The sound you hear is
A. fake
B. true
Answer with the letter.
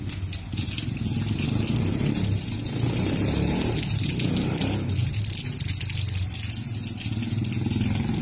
B